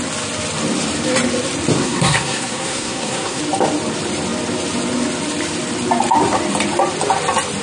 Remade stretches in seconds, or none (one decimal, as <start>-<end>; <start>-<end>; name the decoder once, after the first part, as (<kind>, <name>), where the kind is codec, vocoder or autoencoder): 1.8-3.4 (codec, SNAC)